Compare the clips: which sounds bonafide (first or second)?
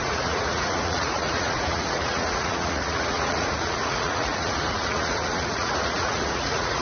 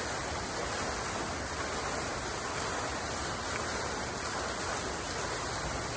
second